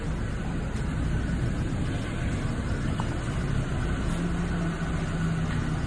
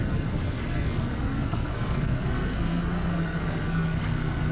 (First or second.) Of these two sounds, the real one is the first